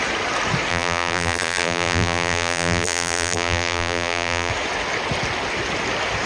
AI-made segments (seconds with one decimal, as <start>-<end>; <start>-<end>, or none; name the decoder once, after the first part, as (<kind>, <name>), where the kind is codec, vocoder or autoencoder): 0.7-4.5 (vocoder, BigVGAN v2)